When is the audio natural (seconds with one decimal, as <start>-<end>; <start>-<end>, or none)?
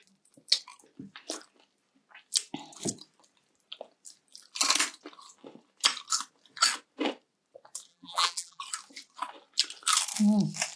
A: 0.0-7.9; 8.6-10.8